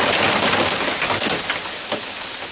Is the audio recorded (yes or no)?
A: yes